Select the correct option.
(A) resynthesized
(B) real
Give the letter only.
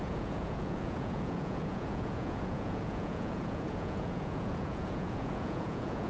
A